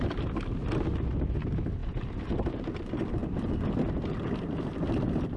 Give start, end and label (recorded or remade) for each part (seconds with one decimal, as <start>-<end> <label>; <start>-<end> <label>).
0.0-5.4 recorded